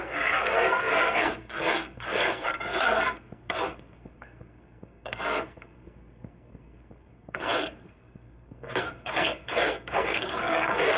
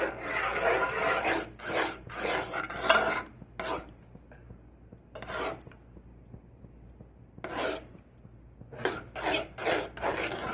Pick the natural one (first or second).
second